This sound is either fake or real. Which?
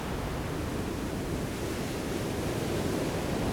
real